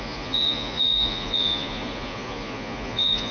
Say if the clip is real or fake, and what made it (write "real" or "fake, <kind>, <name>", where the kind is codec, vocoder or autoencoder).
fake, vocoder, Vocos